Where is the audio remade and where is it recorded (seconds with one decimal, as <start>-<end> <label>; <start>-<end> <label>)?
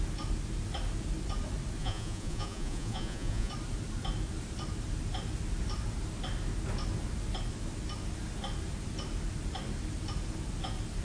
0.0-1.8 recorded; 1.8-3.5 remade; 3.5-11.0 recorded